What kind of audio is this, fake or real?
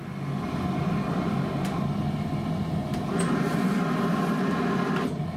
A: real